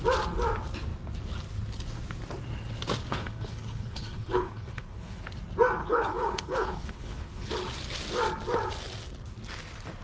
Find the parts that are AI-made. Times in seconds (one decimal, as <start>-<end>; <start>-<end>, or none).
3.1-5.2; 5.8-7.5